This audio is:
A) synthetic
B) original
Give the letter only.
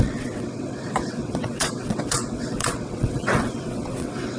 A